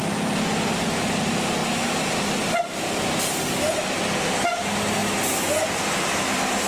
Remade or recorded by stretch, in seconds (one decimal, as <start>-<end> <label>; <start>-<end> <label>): 0.0-5.0 remade; 5.0-5.7 recorded; 5.7-6.7 remade